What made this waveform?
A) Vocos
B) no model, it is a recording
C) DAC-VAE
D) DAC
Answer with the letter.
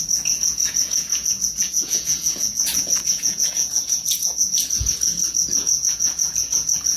A